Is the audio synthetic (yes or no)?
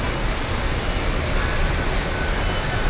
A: no